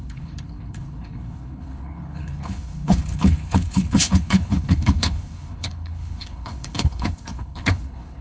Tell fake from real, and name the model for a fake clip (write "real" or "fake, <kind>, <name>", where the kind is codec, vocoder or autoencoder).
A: fake, codec, HILCodec